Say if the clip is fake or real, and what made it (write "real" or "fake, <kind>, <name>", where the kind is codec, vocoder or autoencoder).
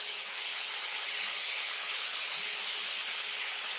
fake, codec, HILCodec